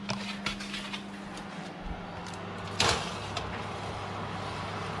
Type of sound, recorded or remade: recorded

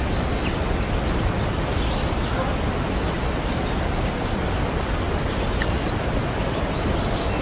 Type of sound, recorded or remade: recorded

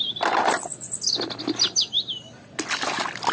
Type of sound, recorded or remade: recorded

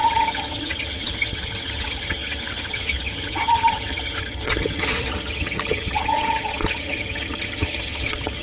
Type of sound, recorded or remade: remade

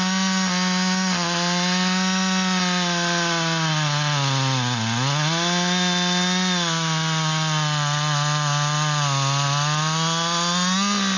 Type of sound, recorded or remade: recorded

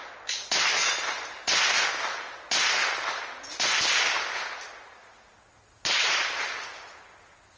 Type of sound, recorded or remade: recorded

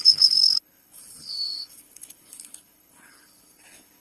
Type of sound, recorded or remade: remade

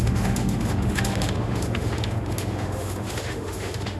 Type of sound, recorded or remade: remade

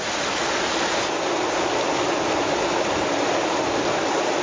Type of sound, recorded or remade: recorded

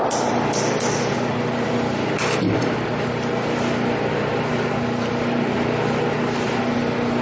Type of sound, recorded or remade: recorded